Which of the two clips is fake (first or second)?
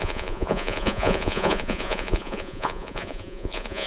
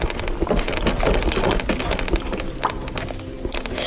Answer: first